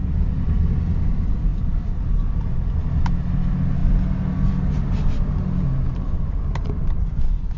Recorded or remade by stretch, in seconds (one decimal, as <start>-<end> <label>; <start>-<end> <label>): 0.0-7.6 recorded